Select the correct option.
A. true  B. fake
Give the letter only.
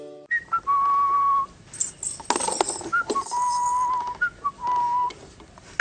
A